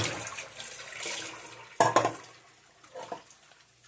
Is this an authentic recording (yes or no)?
yes